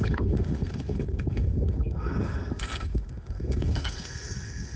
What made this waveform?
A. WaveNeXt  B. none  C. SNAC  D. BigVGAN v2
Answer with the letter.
C